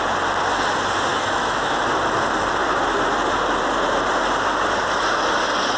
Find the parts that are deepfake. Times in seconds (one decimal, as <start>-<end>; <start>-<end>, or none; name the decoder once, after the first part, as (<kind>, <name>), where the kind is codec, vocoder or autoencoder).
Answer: 1.1-1.8 (autoencoder, DAC-VAE)